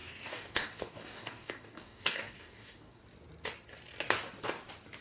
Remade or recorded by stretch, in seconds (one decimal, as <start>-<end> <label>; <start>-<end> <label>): 0.0-3.0 remade; 3.0-5.0 recorded